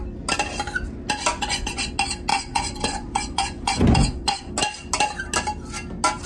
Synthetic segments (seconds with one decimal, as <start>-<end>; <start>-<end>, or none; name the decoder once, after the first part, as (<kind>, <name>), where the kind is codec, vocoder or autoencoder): 1.3-1.9 (vocoder, Vocos); 2.3-4.5